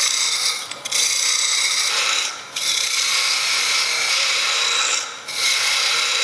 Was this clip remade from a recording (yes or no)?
no